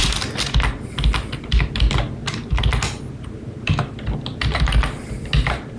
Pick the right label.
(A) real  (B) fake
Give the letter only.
A